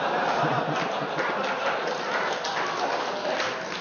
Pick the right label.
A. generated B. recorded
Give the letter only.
B